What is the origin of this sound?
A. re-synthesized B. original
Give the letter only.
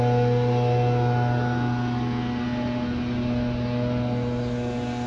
B